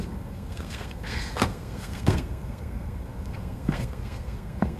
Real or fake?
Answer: fake